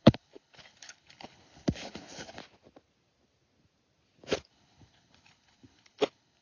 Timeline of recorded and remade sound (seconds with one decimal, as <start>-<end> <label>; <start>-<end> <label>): 0.0-2.4 remade; 2.4-4.5 recorded; 4.5-6.4 remade